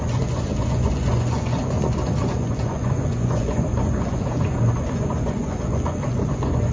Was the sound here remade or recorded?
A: remade